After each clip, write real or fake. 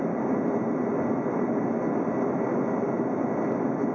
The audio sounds real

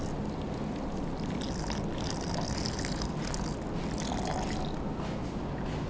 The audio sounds real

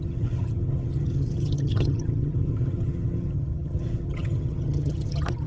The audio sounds fake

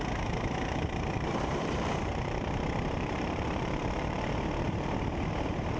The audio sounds fake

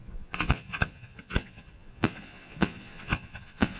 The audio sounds fake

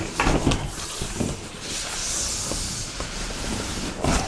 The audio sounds real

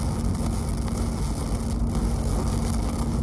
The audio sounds real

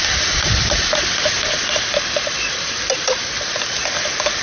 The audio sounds real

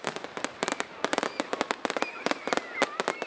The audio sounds real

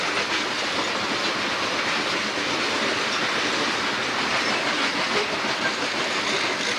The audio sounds real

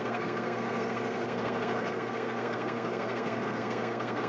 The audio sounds fake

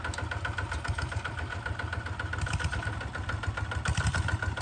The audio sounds real